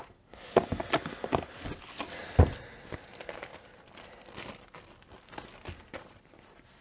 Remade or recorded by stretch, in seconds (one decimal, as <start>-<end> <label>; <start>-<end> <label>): 0.0-6.8 recorded